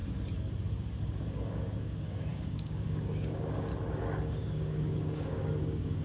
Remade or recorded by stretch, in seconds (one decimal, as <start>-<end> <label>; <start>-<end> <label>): 0.0-1.0 recorded; 1.0-3.7 remade; 3.7-4.3 recorded; 4.3-6.0 remade